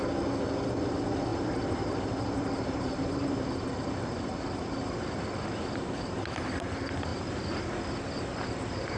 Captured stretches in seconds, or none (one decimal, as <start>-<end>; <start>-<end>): 0.0-1.3; 6.3-7.1; 7.7-9.0